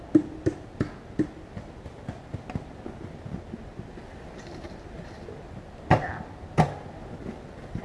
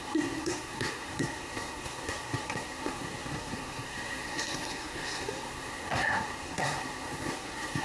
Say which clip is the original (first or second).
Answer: first